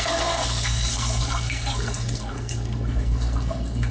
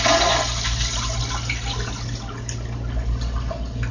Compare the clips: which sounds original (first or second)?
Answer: second